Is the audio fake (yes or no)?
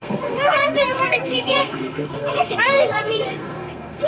yes